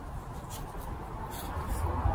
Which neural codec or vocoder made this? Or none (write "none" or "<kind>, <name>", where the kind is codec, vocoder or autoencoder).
none